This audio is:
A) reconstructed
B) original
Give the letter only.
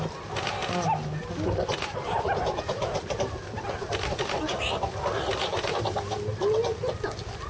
B